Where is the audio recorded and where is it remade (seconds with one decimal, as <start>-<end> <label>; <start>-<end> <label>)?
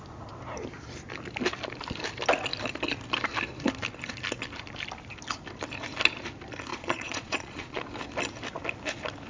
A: 0.0-6.7 recorded; 6.7-7.8 remade; 7.8-9.3 recorded